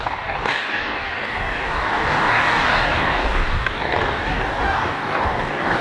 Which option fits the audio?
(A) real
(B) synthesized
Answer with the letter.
B